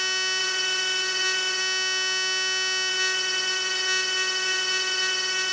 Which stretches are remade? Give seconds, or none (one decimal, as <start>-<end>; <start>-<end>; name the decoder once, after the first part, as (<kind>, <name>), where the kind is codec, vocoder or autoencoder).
0.4-1.6 (vocoder, Vocos); 2.9-5.5